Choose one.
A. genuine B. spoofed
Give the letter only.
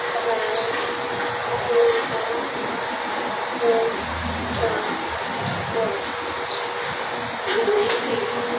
A